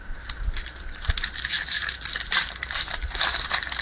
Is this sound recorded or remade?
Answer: remade